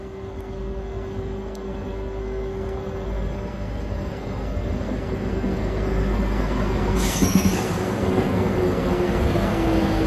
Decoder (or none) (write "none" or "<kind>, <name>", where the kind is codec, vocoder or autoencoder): codec, SNAC